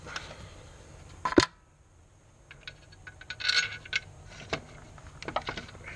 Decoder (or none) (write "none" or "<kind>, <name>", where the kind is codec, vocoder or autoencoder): none